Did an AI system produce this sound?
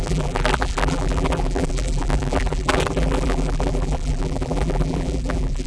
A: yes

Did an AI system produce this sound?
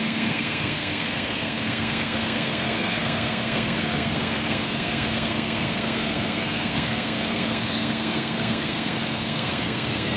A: yes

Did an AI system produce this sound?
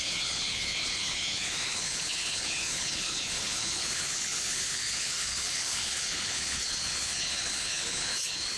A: yes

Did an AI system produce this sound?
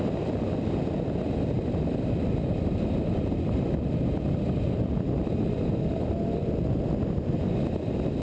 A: no